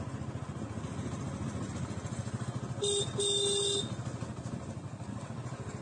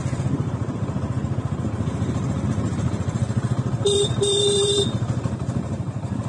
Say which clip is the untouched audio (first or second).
first